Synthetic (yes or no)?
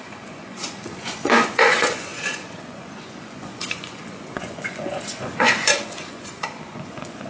yes